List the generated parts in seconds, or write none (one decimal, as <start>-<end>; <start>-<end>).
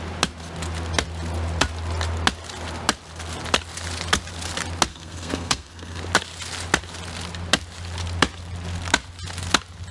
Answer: 4.9-6.0